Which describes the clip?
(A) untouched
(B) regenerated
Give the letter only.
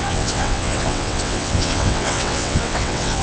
B